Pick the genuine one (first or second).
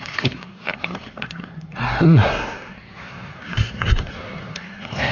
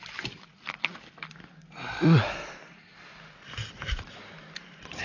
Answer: second